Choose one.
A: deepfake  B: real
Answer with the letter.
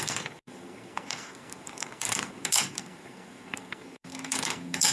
A